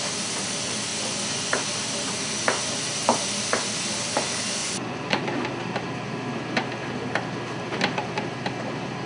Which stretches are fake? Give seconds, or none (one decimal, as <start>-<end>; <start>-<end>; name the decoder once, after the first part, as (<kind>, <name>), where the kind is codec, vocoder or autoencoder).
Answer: 0.9-1.5 (vocoder, Vocos); 4.6-5.2